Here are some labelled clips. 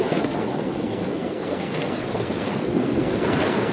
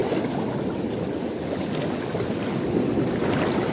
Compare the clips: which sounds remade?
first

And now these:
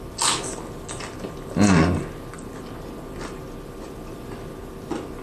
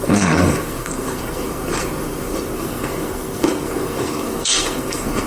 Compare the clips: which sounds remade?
second